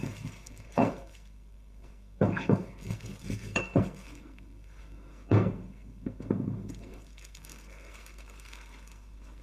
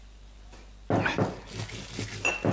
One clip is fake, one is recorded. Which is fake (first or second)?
first